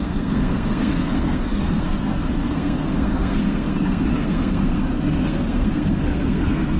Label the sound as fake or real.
fake